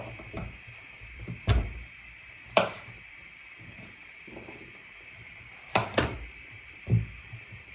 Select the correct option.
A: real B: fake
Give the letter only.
B